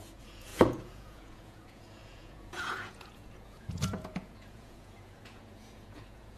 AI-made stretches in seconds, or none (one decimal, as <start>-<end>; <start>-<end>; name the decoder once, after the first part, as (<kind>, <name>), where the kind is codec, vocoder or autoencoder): 0.0-6.4 (vocoder, Vocos)